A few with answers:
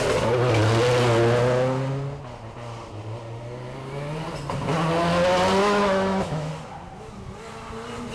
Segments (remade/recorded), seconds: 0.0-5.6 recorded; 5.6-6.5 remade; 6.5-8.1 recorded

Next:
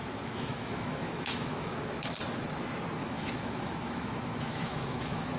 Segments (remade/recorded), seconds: 0.0-2.0 remade; 2.0-3.0 recorded; 3.0-5.4 remade

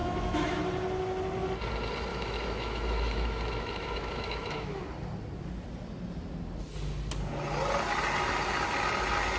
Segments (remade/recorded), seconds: 0.0-0.6 remade; 0.6-2.1 recorded; 2.1-4.8 remade; 4.8-9.4 recorded

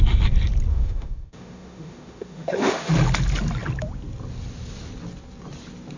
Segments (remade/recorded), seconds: 0.0-0.7 recorded; 0.7-2.9 remade; 2.9-6.0 recorded

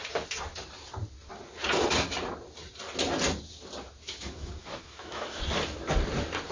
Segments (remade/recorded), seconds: 0.0-4.0 recorded; 4.0-5.4 remade; 5.4-6.5 recorded